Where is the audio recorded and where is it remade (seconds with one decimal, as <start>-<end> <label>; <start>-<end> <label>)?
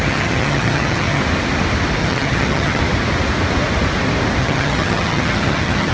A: 0.0-1.2 remade; 1.2-2.0 recorded; 2.0-2.8 remade; 2.8-4.4 recorded; 4.4-5.9 remade